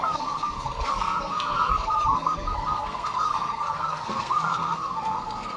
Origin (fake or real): fake